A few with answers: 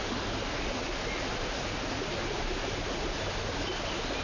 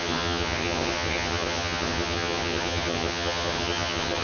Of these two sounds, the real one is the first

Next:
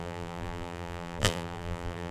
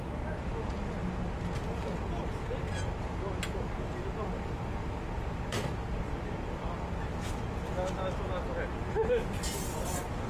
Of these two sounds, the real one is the second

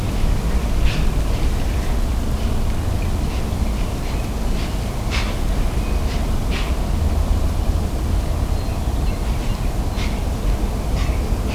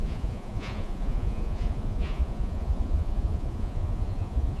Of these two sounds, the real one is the first